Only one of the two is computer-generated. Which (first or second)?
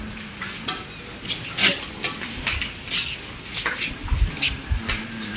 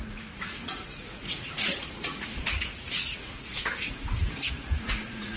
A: second